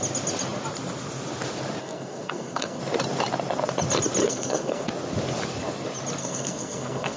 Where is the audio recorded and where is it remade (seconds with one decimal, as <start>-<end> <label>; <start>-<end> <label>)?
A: 0.0-1.8 recorded; 1.8-2.8 remade; 2.8-4.2 recorded; 4.2-4.9 remade; 4.9-6.2 recorded; 6.2-7.2 remade

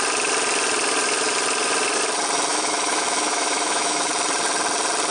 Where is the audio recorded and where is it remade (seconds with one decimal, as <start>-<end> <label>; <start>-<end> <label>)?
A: 0.0-2.5 recorded; 2.5-4.1 remade; 4.1-5.1 recorded